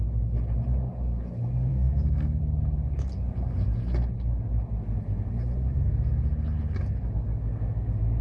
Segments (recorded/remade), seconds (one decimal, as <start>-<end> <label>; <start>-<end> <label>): 0.0-1.7 recorded; 1.7-2.4 remade; 2.4-8.2 recorded